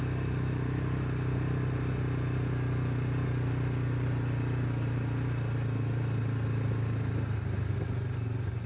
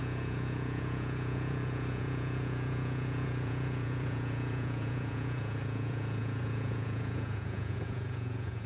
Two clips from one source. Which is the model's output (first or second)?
second